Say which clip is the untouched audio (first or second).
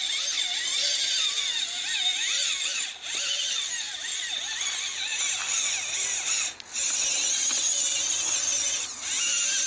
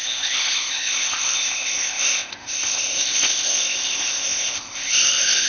first